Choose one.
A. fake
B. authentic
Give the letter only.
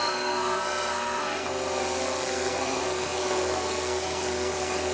A